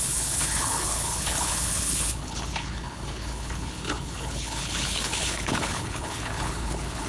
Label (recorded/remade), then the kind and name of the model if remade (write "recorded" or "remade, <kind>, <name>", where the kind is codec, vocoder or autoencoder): remade, codec, HILCodec